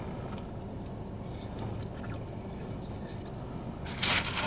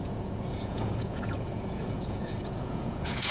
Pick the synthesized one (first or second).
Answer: second